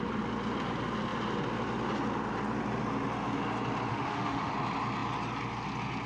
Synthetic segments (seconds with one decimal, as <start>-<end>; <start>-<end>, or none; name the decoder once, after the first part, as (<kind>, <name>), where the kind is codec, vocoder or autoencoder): 3.9-4.5 (autoencoder, DAC-VAE)